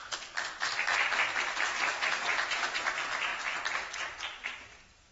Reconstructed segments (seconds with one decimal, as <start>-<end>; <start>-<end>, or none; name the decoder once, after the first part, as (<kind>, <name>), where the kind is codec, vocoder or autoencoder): 2.3-2.8 (vocoder, Vocos)